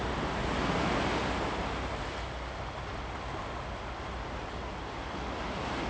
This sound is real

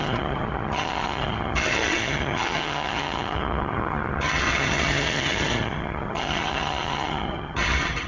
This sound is fake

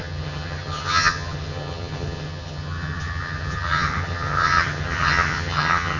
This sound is fake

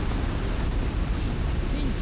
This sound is real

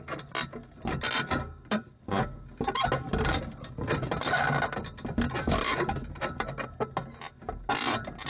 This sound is real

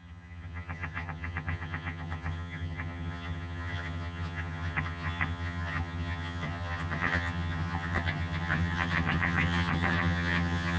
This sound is fake